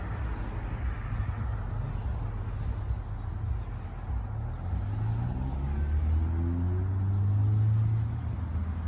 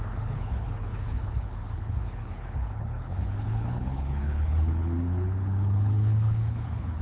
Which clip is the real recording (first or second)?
first